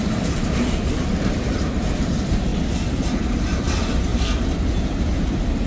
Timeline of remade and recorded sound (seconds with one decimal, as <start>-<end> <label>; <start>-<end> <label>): 0.0-2.5 remade; 2.5-3.1 recorded; 3.1-4.1 remade; 4.1-5.7 recorded